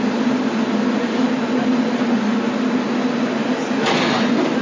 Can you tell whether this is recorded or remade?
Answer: recorded